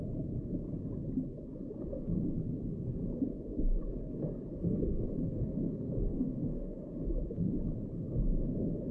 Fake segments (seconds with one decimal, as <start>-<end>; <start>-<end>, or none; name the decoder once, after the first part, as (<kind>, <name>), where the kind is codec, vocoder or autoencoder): 4.5-6.9 (codec, SNAC)